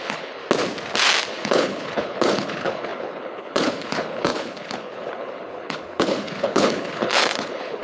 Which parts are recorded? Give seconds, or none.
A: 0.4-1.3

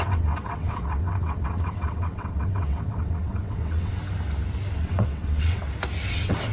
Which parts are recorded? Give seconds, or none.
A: 4.0-4.7; 5.6-6.1

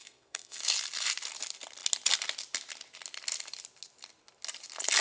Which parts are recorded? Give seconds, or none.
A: 0.6-5.0

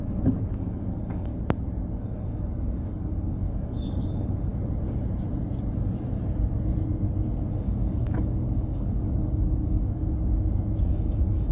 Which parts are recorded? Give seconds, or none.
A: 1.3-2.0; 4.5-7.5; 10.0-10.9

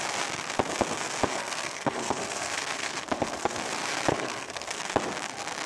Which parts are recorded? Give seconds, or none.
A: 0.0-1.3; 3.6-4.1; 4.8-5.7

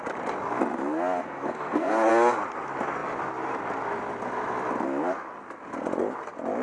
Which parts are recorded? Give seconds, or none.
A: 0.0-1.2; 2.1-6.6

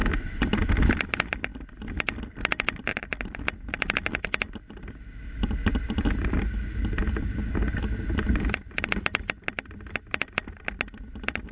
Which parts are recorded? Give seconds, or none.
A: 0.0-11.5

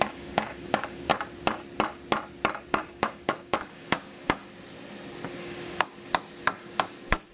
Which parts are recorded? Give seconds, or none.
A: 1.1-2.7; 4.4-5.4; 5.9-7.3